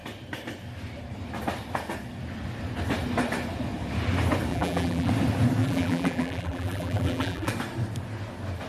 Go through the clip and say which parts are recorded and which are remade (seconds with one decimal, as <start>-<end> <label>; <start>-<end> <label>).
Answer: 0.0-4.5 recorded; 4.5-5.1 remade; 5.1-5.6 recorded; 5.6-7.5 remade; 7.5-8.7 recorded